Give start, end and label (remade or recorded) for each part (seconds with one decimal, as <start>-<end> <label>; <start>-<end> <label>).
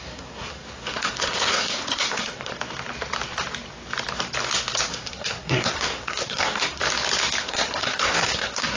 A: 0.0-2.5 remade; 2.5-4.9 recorded; 4.9-6.8 remade; 6.8-7.4 recorded; 7.4-8.8 remade